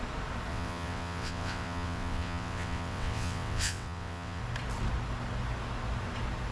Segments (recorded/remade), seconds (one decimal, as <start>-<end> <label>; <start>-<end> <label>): 0.0-0.5 recorded; 0.5-4.4 remade; 4.4-6.5 recorded